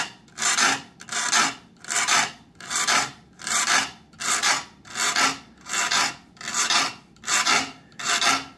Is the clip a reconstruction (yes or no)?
no